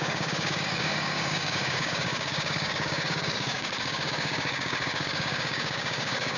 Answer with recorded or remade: remade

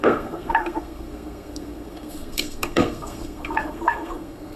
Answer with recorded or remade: remade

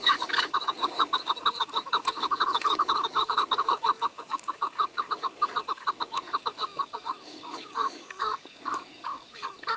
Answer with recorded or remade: remade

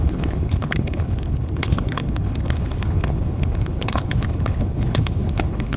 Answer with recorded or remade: remade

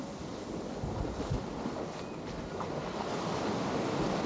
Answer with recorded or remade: recorded